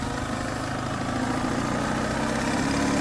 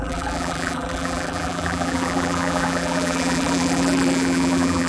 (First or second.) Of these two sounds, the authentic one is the first